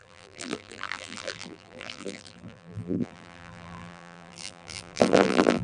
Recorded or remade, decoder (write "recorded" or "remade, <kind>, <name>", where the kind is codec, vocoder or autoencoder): remade, vocoder, BigVGAN v2